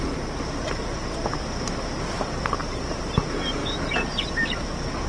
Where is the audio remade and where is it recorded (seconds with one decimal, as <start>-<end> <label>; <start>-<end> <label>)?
0.0-2.6 recorded; 2.6-3.2 remade; 3.2-5.1 recorded

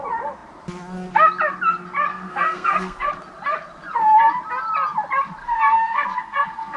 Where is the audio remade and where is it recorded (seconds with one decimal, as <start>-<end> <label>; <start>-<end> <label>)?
0.0-2.1 recorded; 2.1-3.1 remade; 3.1-5.4 recorded; 5.4-6.8 remade

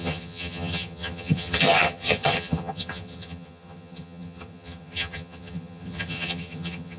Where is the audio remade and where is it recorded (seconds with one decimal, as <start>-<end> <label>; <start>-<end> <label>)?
0.0-7.0 remade

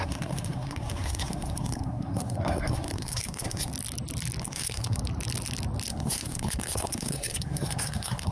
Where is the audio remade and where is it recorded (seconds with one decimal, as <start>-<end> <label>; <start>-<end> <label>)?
0.0-3.7 remade; 3.7-4.4 recorded; 4.4-5.0 remade; 5.0-5.9 recorded; 5.9-8.3 remade

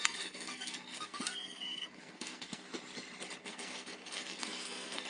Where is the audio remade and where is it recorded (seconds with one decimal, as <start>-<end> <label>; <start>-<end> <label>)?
0.0-2.7 remade; 2.7-3.4 recorded; 3.4-5.1 remade

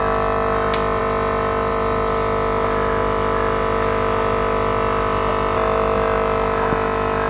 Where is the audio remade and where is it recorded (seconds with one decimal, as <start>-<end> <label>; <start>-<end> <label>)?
0.0-7.3 recorded

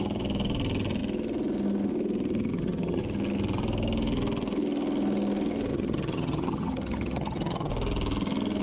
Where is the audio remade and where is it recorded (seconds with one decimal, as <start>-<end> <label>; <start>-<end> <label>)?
0.0-2.5 recorded; 2.5-3.0 remade; 3.0-5.7 recorded; 5.7-7.7 remade; 7.7-8.6 recorded